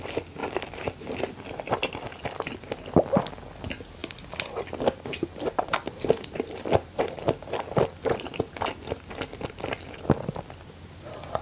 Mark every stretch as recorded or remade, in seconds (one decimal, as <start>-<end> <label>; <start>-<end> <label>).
0.0-11.4 recorded

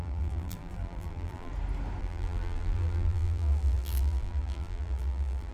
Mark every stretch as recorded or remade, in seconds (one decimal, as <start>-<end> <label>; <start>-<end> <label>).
0.0-1.5 remade; 1.5-2.0 recorded; 2.0-5.5 remade

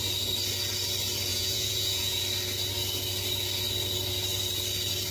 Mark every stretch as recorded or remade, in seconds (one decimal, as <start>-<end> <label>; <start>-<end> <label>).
0.0-1.3 recorded; 1.3-2.2 remade; 2.2-5.1 recorded

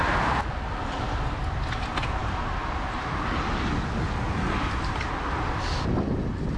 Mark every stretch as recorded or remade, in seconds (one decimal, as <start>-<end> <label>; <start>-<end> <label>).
0.0-6.6 recorded

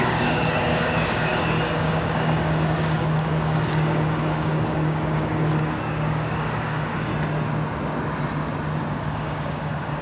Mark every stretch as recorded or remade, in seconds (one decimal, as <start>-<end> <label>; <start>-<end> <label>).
0.0-7.1 remade; 7.1-8.8 recorded; 8.8-10.0 remade

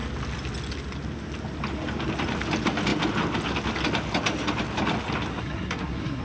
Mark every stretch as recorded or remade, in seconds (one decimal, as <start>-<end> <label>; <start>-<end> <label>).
0.0-5.3 recorded; 5.3-6.2 remade